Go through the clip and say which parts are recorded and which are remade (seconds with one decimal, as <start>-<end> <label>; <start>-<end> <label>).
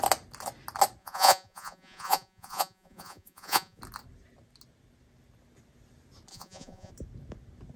0.0-1.0 recorded; 1.0-3.8 remade; 3.8-6.3 recorded; 6.3-6.9 remade; 6.9-7.8 recorded